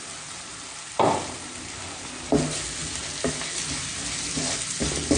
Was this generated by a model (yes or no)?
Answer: no